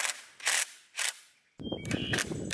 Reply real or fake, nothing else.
real